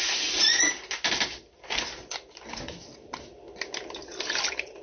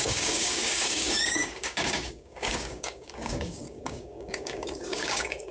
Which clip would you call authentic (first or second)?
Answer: first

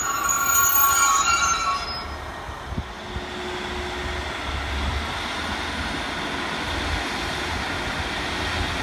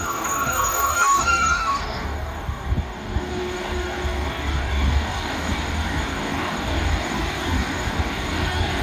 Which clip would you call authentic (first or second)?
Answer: first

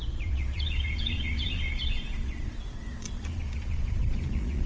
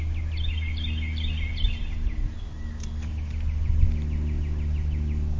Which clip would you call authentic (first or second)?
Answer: second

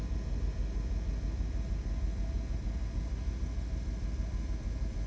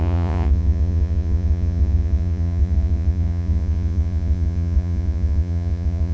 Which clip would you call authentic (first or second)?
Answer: first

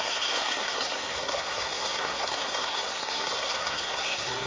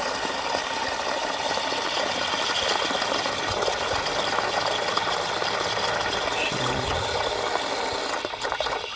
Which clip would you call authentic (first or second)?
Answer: second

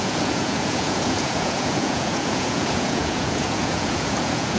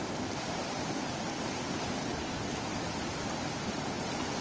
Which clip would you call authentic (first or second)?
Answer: second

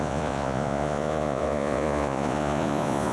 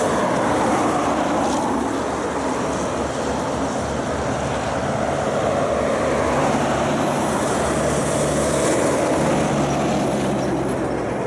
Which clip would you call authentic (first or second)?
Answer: second